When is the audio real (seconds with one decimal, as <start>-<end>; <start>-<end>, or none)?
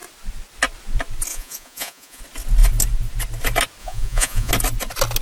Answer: 0.0-1.3; 2.2-3.8; 4.5-5.2